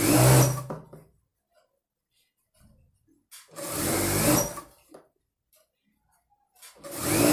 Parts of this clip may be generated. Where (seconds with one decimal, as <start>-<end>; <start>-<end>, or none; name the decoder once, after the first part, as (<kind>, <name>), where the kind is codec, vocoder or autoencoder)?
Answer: none

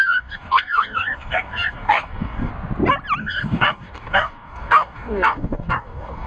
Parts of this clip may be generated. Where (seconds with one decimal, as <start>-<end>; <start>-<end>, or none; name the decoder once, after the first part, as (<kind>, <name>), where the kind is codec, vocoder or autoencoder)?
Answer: 0.0-2.5 (codec, DAC); 3.2-6.3

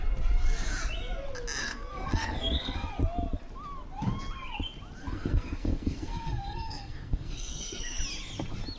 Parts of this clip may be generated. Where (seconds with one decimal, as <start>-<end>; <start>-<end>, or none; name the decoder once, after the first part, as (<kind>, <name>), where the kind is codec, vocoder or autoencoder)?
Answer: 1.6-2.9 (codec, SNAC); 5.0-8.0

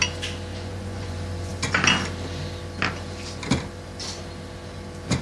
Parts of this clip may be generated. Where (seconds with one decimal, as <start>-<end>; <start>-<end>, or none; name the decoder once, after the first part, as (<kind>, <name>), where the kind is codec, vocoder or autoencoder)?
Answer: 0.5-1.1 (vocoder, Vocos)

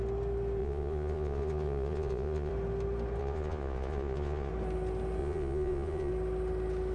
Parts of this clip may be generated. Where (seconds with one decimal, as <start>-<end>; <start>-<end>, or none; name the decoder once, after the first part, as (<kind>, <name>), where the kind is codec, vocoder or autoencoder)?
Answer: 0.6-2.5 (vocoder, Vocos); 3.2-4.5; 5.2-6.1

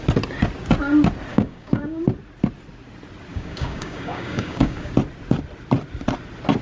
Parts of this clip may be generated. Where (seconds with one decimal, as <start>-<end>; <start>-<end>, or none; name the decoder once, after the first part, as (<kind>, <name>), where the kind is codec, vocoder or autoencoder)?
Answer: 1.3-2.0 (codec, DAC); 3.3-4.9